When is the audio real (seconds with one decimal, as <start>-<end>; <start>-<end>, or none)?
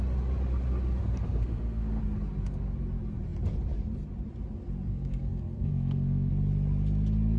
0.0-1.0; 2.0-4.9; 6.3-7.4